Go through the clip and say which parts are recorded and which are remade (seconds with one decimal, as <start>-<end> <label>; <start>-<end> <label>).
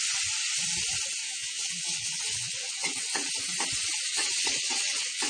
0.0-1.2 recorded; 1.2-3.3 remade; 3.3-4.1 recorded; 4.1-5.3 remade